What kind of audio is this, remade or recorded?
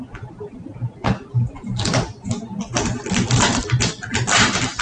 recorded